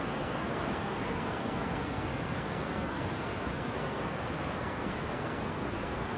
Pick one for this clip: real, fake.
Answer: fake